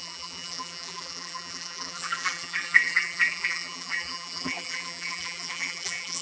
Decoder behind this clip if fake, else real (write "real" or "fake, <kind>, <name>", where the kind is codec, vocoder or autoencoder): fake, vocoder, BigVGAN v2